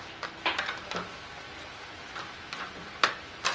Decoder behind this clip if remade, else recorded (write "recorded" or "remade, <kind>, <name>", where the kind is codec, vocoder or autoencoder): recorded